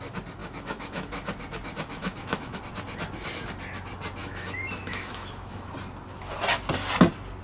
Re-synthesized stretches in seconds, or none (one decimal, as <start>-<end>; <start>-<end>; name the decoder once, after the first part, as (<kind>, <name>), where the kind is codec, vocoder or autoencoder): 0.4-1.3 (autoencoder, DAC-VAE); 2.0-2.6; 4.2-5.7